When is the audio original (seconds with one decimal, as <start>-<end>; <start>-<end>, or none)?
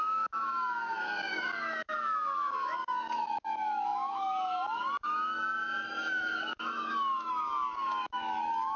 none